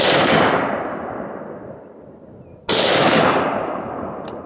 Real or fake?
real